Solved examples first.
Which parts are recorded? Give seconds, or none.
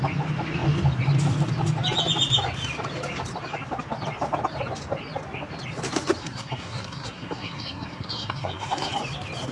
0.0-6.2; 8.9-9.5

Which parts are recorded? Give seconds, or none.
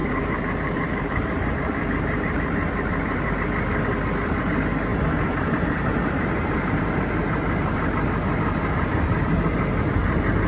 3.4-4.9; 7.9-10.5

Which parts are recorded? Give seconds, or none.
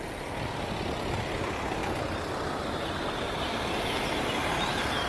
0.0-5.1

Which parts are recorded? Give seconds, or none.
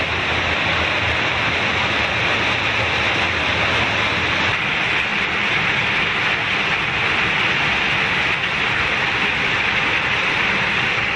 0.0-11.2